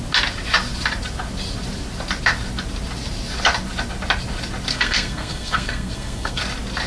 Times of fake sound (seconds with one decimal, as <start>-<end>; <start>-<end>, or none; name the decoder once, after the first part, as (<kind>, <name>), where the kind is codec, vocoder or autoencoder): 4.7-6.4 (codec, SNAC)